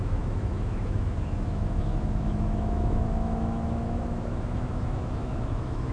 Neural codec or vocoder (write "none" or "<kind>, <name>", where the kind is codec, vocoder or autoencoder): autoencoder, DAC-VAE